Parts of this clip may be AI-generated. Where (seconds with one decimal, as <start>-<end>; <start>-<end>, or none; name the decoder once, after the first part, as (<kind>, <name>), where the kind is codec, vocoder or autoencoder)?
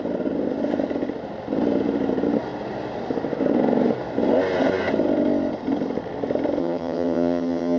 6.6-7.8 (vocoder, HiFi-GAN)